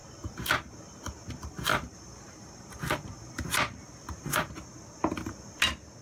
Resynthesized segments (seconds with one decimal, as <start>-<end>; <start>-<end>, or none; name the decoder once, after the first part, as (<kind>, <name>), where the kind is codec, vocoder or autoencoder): 1.7-4.5 (vocoder, BigVGAN v2)